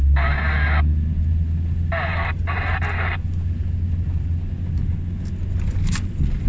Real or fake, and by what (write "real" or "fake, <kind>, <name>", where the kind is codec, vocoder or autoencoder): real